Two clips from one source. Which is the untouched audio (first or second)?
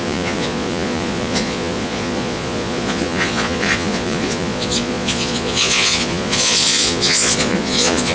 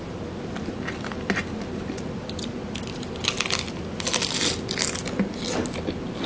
second